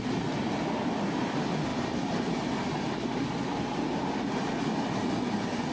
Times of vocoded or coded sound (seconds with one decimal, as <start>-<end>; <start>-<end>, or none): none